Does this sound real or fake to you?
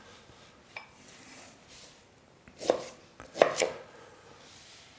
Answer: real